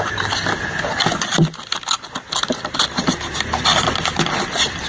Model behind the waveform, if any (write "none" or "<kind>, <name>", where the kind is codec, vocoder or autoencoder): none